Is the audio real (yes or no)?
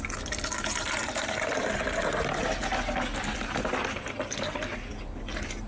yes